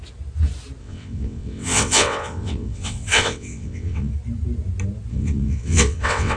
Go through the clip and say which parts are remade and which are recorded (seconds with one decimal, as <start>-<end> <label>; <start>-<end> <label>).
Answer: 0.0-0.8 recorded; 0.8-4.1 remade; 4.1-5.1 recorded; 5.1-6.4 remade